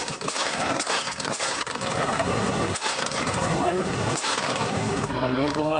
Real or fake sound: fake